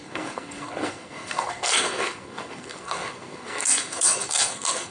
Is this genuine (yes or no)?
no